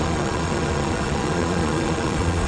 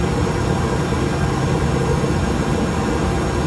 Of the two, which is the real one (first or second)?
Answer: second